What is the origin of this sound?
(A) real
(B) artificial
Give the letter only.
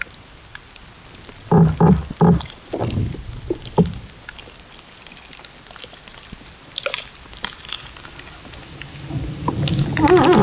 A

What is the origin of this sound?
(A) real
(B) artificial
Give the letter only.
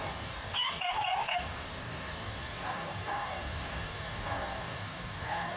B